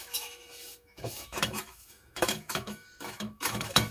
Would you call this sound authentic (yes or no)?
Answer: no